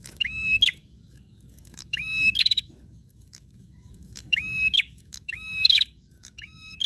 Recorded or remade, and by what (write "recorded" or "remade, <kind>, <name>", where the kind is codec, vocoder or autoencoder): remade, codec, DAC